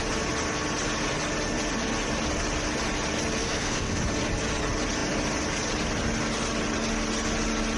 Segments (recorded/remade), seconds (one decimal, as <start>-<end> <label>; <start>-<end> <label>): 0.0-3.4 recorded; 3.4-4.0 remade; 4.0-7.8 recorded